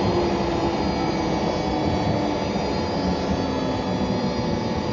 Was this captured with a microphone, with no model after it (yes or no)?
yes